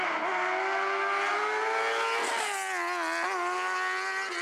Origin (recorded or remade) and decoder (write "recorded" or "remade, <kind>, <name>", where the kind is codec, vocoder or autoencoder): recorded